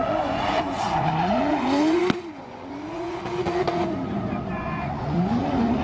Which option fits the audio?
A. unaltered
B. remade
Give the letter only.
B